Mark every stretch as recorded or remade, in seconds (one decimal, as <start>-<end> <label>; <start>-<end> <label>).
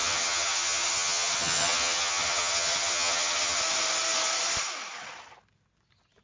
0.0-3.6 remade; 3.6-6.2 recorded